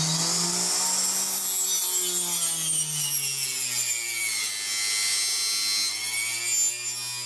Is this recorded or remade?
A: recorded